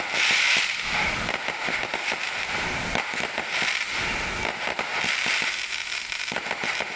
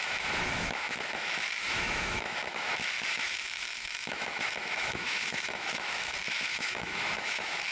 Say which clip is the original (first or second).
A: first